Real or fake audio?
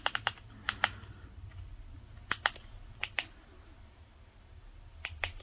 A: real